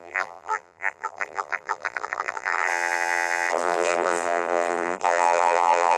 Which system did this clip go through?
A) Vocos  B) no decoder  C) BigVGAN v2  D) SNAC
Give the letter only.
C